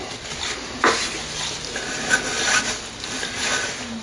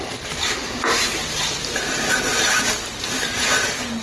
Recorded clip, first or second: first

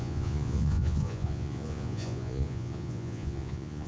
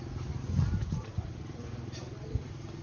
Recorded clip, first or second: second